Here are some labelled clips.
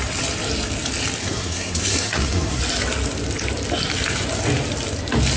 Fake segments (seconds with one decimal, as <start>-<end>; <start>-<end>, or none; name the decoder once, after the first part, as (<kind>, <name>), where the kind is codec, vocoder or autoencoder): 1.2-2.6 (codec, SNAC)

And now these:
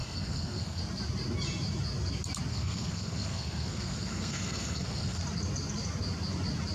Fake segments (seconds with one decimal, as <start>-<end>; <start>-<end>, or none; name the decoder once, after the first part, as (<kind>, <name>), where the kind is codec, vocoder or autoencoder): 0.0-0.8 (codec, SNAC); 2.5-5.2

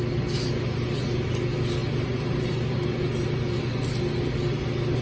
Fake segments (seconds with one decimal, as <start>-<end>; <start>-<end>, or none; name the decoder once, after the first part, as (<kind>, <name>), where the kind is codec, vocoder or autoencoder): none

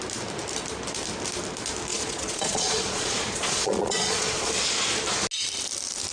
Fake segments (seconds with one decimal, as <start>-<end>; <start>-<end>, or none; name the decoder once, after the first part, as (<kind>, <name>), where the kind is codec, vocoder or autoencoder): 1.9-4.5 (vocoder, Vocos)